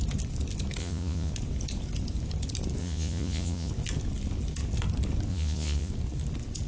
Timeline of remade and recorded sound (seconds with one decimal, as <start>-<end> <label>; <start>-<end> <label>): 0.0-0.8 recorded; 0.8-1.3 remade; 1.3-2.8 recorded; 2.8-3.7 remade; 3.7-5.3 recorded; 5.3-5.9 remade; 5.9-6.7 recorded